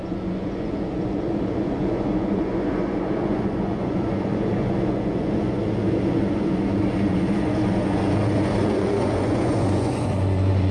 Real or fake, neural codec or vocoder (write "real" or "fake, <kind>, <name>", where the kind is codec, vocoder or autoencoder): fake, vocoder, Vocos